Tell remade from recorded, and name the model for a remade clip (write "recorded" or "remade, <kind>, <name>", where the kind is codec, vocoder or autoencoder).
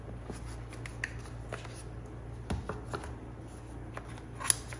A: recorded